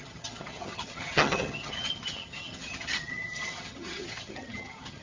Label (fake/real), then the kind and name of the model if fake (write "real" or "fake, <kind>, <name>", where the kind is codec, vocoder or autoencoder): fake, vocoder, HiFi-GAN